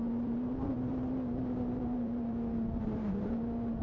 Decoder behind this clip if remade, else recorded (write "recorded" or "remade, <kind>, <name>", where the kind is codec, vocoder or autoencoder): remade, vocoder, BigVGAN v2